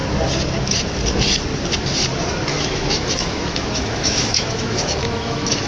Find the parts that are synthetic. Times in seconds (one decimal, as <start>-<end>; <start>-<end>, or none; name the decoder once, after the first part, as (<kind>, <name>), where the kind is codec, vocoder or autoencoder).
2.5-5.7 (autoencoder, DAC-VAE)